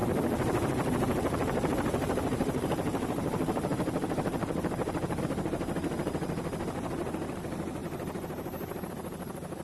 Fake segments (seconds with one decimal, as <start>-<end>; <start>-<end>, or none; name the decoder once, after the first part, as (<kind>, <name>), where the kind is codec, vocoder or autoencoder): 0.0-5.2 (vocoder, BigVGAN v2)